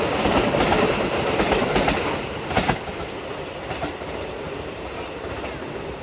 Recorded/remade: recorded